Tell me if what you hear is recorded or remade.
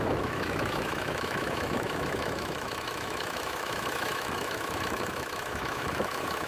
remade